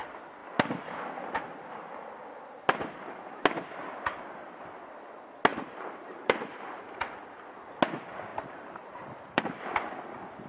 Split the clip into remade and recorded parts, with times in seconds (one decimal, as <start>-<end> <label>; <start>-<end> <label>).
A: 0.0-5.5 recorded; 5.5-6.8 remade; 6.8-8.3 recorded; 8.3-9.4 remade; 9.4-10.5 recorded